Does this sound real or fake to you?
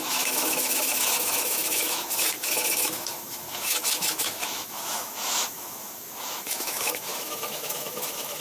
fake